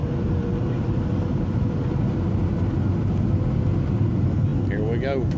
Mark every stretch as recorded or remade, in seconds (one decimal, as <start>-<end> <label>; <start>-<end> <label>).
0.0-2.0 remade; 2.0-5.4 recorded